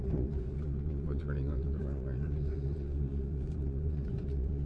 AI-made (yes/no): yes